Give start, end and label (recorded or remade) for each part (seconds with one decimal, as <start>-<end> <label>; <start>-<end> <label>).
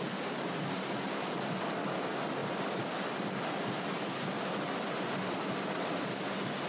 0.0-6.7 recorded